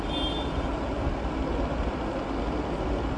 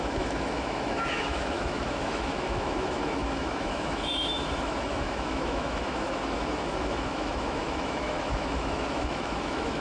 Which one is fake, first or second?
second